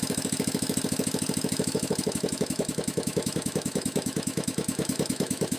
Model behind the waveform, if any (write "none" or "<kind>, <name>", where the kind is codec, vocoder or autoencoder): autoencoder, DAC-VAE